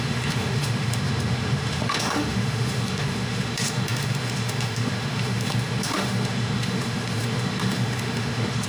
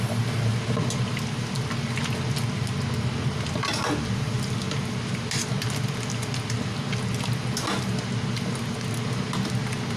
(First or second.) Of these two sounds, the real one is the second